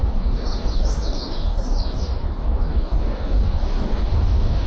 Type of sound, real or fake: fake